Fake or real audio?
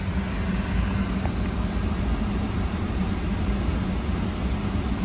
real